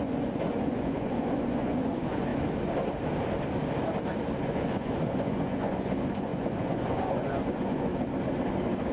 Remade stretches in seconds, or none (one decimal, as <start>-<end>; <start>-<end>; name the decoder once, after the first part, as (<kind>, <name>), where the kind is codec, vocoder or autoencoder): 0.0-2.3 (vocoder, Vocos); 4.4-7.9